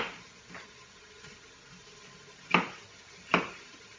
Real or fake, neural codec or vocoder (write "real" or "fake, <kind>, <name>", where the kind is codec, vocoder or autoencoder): real